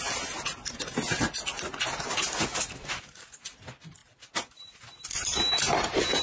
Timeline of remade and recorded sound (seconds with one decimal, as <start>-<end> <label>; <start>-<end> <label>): 0.0-6.2 recorded